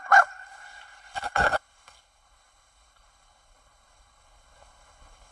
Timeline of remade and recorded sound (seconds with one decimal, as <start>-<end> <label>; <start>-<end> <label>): 0.0-5.3 remade